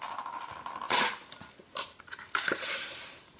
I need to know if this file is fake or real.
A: real